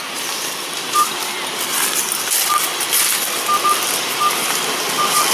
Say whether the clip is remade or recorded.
recorded